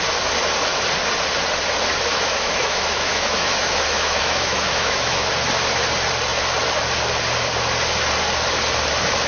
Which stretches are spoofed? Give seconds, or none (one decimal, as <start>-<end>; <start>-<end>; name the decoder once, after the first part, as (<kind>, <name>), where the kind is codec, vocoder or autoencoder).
2.1-5.3 (autoencoder, DAC-VAE)

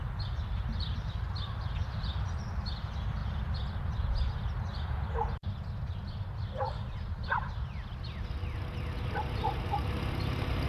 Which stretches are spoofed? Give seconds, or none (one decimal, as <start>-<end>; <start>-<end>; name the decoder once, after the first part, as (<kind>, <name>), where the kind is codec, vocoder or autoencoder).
none